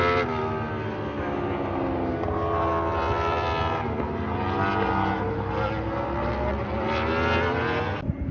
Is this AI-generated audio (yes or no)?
no